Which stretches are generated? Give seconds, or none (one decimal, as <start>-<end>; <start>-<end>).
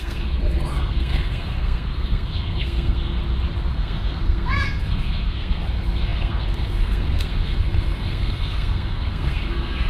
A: 0.0-3.2; 3.7-9.9